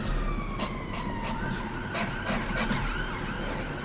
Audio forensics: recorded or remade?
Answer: recorded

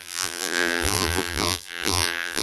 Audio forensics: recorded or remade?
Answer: remade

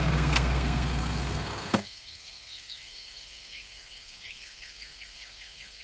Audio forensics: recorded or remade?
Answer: remade